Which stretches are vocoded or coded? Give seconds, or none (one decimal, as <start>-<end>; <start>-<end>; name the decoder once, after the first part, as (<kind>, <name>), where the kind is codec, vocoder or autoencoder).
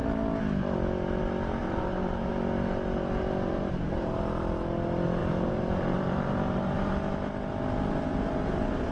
1.6-2.3 (vocoder, BigVGAN v2); 3.5-4.2; 5.2-6.9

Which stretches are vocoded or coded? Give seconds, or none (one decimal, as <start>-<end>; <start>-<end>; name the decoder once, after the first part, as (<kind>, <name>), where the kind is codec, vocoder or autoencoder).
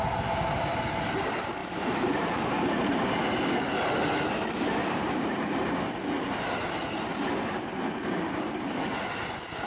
1.6-3.1 (vocoder, BigVGAN v2); 4.8-5.8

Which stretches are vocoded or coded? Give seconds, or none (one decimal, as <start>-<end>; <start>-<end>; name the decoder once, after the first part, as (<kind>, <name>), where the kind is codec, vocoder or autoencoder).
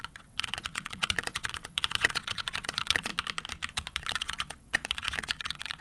0.0-3.1 (vocoder, WaveNeXt); 3.7-5.8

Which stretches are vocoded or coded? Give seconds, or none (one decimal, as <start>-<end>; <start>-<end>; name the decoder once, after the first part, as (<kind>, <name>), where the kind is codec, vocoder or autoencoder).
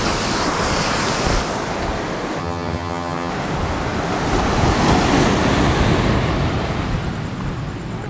2.4-3.3 (vocoder, HiFi-GAN)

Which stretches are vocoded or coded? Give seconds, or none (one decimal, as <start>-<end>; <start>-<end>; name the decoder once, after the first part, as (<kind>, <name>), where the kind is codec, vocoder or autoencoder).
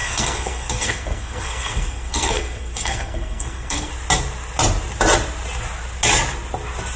0.0-3.9 (codec, SNAC)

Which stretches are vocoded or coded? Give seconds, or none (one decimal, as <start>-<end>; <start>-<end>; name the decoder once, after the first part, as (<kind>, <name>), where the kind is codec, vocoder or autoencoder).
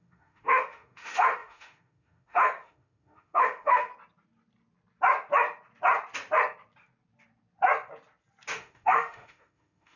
0.0-3.9 (autoencoder, DAC-VAE); 8.5-10.0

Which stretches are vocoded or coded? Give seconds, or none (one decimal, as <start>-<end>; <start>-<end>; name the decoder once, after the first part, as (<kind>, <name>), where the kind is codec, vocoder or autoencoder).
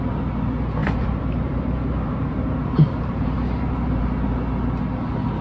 0.8-4.0 (vocoder, BigVGAN v2)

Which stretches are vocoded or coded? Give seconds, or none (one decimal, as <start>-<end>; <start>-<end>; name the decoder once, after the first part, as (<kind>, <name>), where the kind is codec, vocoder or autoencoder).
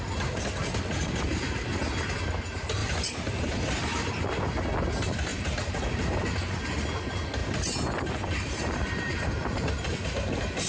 2.8-4.1 (vocoder, BigVGAN v2); 5.3-6.3; 7.4-9.9